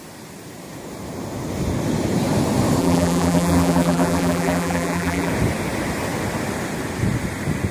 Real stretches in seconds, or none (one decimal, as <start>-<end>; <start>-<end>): 0.0-2.8; 5.3-7.7